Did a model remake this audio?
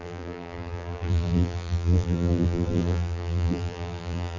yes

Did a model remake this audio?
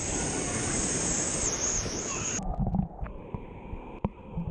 no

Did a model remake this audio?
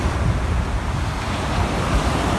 no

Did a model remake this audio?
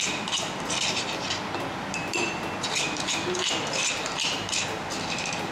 yes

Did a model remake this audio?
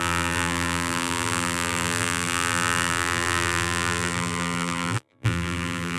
yes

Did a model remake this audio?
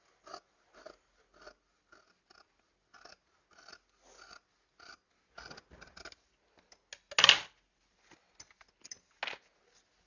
no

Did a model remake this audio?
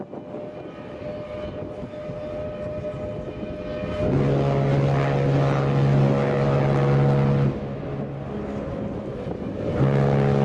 no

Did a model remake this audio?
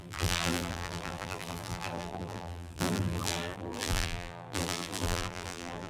yes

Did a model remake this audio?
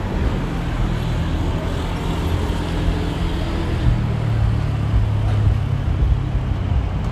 no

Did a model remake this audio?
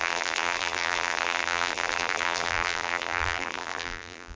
yes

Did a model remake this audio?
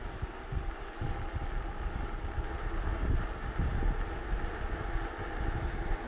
no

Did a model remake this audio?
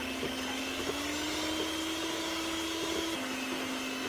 no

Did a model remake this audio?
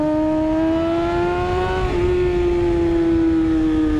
no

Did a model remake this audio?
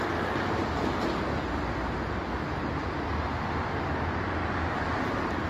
no